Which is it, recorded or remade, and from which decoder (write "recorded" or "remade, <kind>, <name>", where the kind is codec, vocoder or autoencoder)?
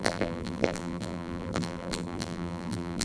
remade, vocoder, BigVGAN v2